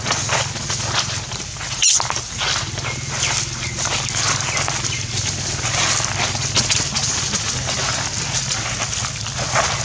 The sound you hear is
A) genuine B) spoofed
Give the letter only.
A